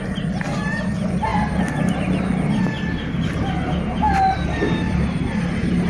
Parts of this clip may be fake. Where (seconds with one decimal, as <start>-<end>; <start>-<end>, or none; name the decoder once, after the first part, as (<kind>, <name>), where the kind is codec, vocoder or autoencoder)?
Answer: none